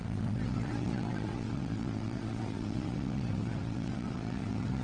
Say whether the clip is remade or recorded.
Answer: remade